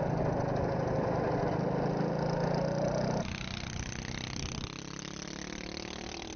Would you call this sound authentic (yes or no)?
yes